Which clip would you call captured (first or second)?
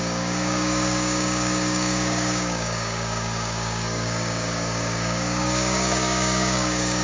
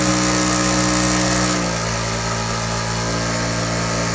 second